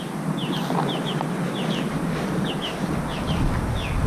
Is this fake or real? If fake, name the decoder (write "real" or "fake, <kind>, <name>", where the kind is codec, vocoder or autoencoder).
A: real